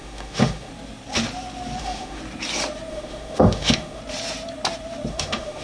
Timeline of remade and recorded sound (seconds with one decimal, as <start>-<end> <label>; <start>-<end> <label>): 0.0-0.7 remade; 0.7-1.8 recorded; 1.8-2.2 remade; 2.2-2.9 recorded; 2.9-4.0 remade; 4.0-5.1 recorded; 5.1-5.6 remade